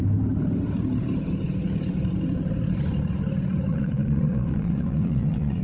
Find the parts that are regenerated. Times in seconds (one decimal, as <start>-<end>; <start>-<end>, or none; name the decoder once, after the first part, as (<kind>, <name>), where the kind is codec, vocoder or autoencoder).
3.7-5.6 (vocoder, Vocos)